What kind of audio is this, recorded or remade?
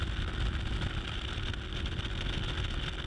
recorded